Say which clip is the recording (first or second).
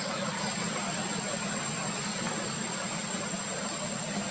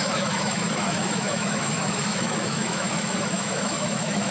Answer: first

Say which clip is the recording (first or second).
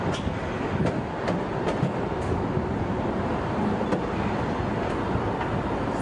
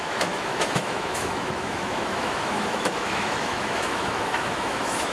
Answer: first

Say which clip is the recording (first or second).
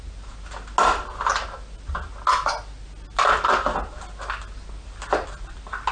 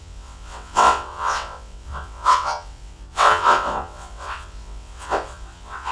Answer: first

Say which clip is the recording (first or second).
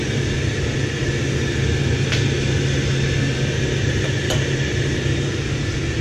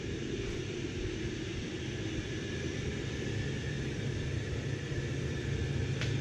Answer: first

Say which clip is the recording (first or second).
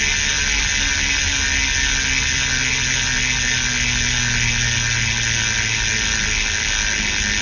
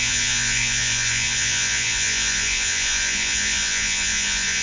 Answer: first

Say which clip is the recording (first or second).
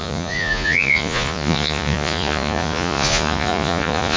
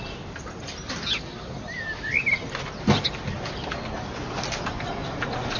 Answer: second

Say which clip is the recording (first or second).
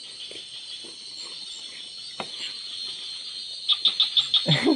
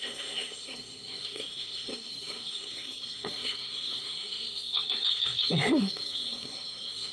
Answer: first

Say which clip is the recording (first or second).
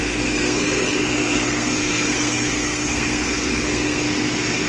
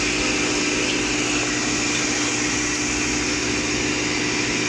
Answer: second